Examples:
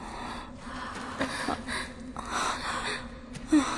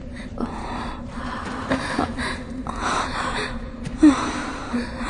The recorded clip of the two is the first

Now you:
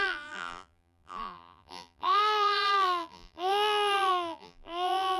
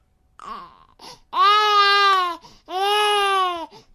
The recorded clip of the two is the second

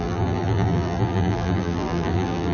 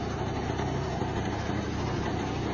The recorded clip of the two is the second